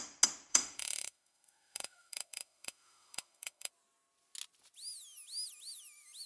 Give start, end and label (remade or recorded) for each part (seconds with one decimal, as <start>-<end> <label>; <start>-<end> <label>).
0.0-0.5 recorded; 0.5-3.7 remade; 3.7-6.3 recorded